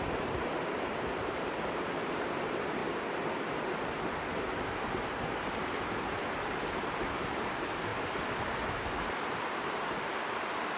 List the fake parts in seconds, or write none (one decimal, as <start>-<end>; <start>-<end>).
0.0-2.8; 6.1-7.9; 9.2-10.8